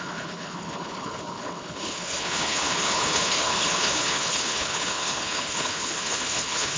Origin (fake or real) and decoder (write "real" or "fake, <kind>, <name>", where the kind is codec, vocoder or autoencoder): fake, codec, HILCodec